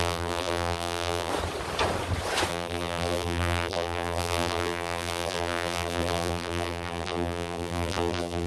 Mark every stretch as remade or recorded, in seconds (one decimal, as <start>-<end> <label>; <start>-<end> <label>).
0.0-1.3 remade; 1.3-2.5 recorded; 2.5-8.5 remade